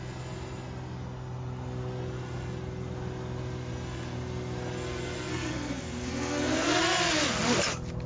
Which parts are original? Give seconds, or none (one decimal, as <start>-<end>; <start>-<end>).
0.0-5.3; 6.8-8.1